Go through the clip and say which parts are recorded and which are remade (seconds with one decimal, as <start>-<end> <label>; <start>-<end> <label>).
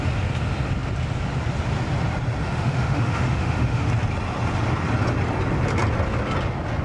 0.0-2.4 recorded; 2.4-3.9 remade; 3.9-6.8 recorded